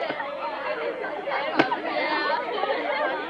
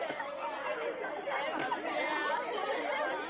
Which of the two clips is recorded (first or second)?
second